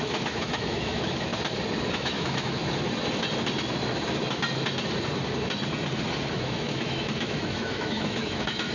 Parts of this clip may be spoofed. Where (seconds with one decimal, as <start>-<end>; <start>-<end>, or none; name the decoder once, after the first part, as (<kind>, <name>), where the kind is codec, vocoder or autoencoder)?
0.0-1.3 (autoencoder, DAC-VAE); 1.9-2.6; 6.3-8.7